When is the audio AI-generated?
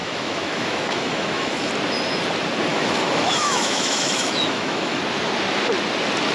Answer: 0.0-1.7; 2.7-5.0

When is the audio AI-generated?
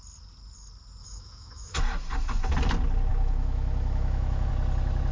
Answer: 1.0-1.8; 3.1-4.5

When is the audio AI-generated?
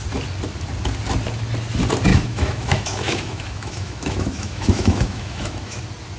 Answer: 2.1-5.8